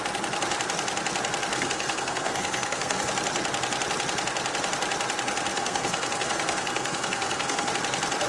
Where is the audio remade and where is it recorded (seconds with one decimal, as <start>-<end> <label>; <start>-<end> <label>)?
0.0-1.5 recorded; 1.5-3.1 remade; 3.1-5.5 recorded; 5.5-7.7 remade; 7.7-8.3 recorded